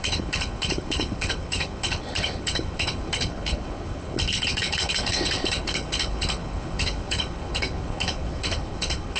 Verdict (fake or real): fake